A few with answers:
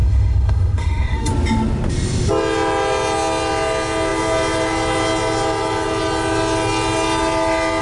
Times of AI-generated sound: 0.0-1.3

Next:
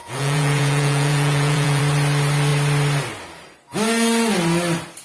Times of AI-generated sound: 0.0-1.8

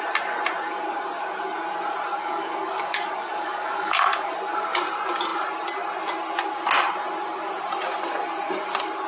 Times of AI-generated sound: 2.2-4.3

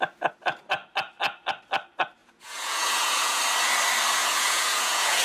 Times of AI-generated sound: 2.2-3.4; 4.2-5.2